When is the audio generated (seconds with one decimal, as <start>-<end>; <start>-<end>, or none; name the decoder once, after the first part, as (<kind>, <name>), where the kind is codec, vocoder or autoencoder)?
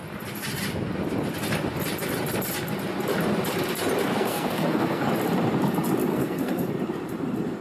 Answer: 4.0-5.1 (codec, SNAC); 6.1-6.7